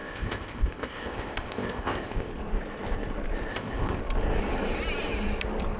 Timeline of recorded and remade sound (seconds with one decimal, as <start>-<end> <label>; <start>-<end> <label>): 0.0-2.3 remade; 2.3-3.5 recorded; 3.5-4.0 remade; 4.0-5.8 recorded